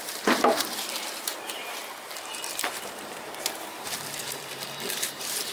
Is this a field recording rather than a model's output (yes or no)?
no